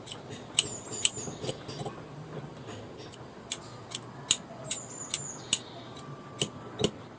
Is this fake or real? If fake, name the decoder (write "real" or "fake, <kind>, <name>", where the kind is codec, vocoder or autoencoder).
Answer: real